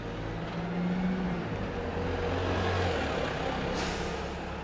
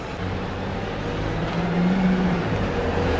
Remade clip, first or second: second